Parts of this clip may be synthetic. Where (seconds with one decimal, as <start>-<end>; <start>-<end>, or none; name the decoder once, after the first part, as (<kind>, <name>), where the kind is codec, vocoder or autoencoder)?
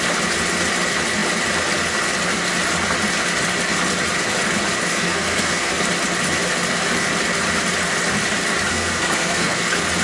4.9-5.7 (codec, SNAC); 8.7-9.6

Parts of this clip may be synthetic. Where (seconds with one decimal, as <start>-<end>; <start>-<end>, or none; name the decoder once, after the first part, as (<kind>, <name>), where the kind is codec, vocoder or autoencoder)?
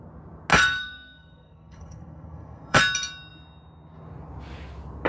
0.5-2.8 (codec, SNAC)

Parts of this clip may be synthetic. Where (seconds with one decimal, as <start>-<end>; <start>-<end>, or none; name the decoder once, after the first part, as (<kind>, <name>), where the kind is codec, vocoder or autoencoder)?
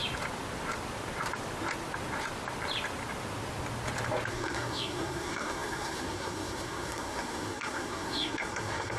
4.3-9.0 (codec, SNAC)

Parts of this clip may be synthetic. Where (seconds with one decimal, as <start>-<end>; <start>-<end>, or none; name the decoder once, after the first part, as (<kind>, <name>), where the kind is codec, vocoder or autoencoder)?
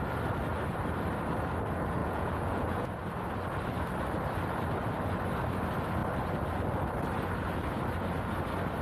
2.0-2.9 (vocoder, Vocos)